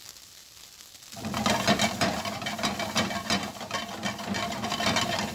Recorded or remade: recorded